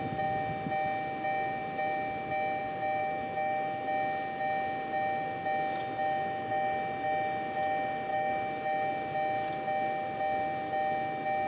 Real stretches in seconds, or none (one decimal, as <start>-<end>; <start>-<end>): 0.0-3.0; 3.8-8.1; 8.9-11.5